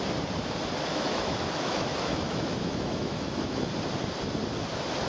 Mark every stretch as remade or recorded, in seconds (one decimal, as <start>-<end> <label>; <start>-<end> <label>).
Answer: 0.0-0.9 recorded; 0.9-3.7 remade; 3.7-5.1 recorded